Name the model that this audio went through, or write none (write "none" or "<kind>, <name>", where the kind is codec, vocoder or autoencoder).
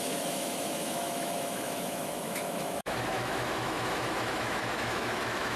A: autoencoder, DAC-VAE